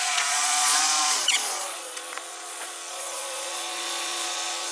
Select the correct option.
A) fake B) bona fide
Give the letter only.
A